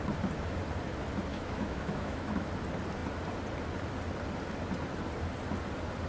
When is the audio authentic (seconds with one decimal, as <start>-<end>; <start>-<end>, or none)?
0.0-1.3; 2.5-6.1